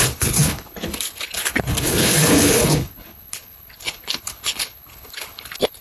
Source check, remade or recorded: remade